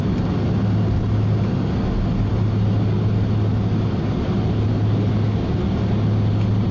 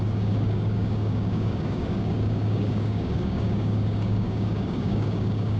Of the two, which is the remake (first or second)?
second